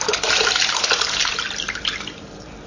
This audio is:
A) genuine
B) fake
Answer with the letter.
B